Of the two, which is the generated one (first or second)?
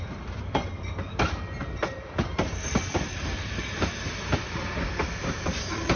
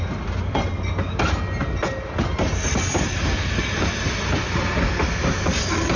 first